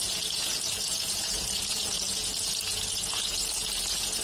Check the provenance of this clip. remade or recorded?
remade